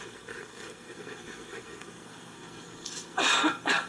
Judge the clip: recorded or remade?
remade